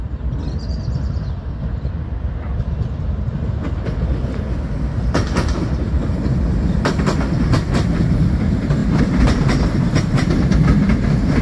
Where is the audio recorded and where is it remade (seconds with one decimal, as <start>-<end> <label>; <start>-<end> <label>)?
0.0-8.8 recorded; 8.8-10.3 remade; 10.3-11.4 recorded